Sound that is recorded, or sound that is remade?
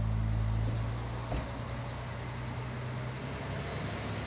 recorded